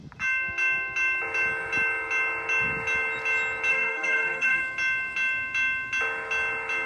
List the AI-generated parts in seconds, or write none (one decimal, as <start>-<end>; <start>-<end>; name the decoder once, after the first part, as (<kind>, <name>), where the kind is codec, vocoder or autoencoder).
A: 3.7-4.6 (codec, SNAC)